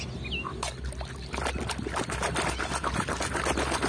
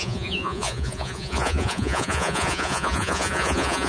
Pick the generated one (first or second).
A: second